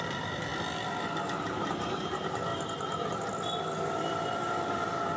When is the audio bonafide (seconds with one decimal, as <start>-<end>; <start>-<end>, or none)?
0.0-5.2